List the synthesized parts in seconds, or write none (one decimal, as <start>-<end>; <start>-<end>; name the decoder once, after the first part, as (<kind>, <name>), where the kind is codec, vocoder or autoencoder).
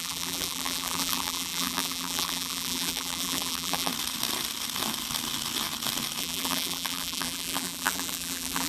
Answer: 0.0-3.9 (vocoder, BigVGAN v2); 6.2-8.7